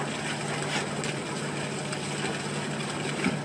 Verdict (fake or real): real